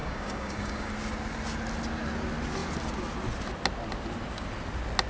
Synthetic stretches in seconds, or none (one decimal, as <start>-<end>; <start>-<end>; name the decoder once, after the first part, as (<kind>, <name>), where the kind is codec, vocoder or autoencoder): 0.0-0.9 (codec, DAC)